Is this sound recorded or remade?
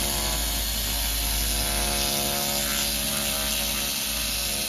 recorded